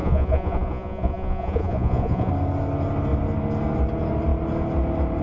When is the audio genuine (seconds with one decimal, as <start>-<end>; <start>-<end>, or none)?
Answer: 2.3-5.2

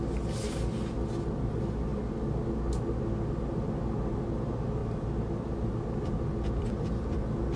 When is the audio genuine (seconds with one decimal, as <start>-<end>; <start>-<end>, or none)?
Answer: 0.0-7.6

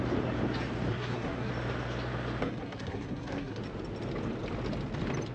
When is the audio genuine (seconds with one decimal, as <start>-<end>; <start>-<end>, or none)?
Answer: 0.0-0.9; 1.5-2.4; 3.6-5.3

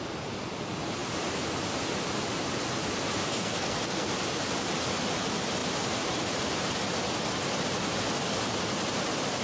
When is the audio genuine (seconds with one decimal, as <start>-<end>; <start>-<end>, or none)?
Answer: 0.0-3.3; 4.1-9.4

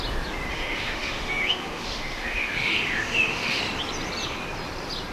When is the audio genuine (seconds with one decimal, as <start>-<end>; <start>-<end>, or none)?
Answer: 0.0-0.5; 3.6-5.1